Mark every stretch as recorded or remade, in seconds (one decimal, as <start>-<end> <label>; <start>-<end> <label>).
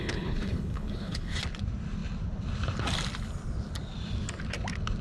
0.0-1.4 remade; 1.4-5.0 recorded